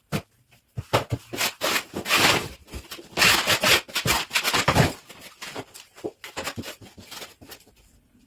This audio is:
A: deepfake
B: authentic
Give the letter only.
B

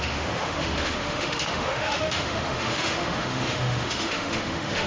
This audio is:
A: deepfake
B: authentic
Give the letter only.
A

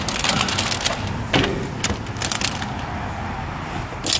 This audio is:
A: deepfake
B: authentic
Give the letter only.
B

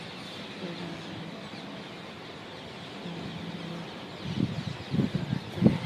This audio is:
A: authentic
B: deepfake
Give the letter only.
A